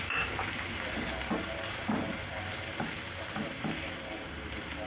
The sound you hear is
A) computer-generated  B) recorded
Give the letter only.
A